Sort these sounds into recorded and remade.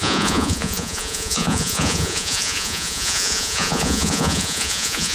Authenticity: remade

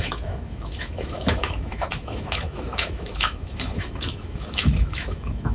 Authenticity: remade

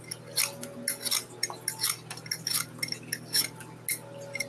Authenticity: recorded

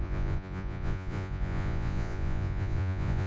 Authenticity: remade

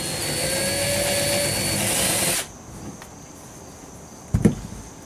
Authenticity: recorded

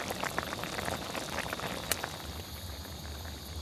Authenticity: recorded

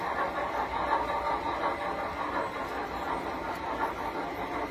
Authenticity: recorded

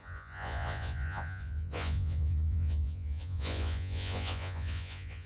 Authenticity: remade